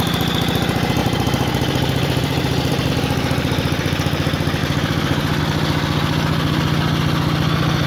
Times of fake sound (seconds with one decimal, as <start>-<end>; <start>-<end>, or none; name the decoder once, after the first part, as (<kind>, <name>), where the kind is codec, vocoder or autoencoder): 1.0-2.9 (vocoder, BigVGAN v2); 4.6-5.4